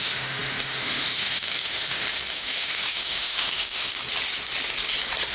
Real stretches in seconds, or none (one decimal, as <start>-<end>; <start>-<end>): 4.0-5.3